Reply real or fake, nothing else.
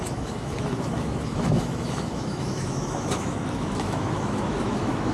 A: fake